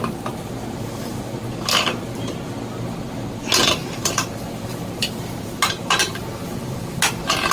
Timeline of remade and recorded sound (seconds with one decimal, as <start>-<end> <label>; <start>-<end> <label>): 0.0-3.8 recorded; 3.8-7.0 remade; 7.0-7.5 recorded